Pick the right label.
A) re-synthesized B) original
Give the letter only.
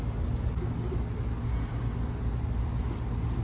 B